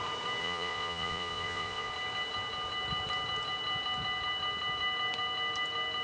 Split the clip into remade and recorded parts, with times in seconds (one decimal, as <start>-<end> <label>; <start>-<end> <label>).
0.0-0.4 recorded; 0.4-1.9 remade; 1.9-6.0 recorded